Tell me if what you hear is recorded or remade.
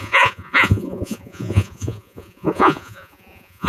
remade